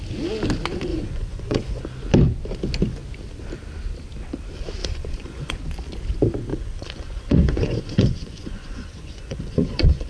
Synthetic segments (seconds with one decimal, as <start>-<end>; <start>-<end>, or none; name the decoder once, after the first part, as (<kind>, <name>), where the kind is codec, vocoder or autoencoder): 0.9-1.8 (vocoder, Vocos); 4.8-5.5; 6.5-10.1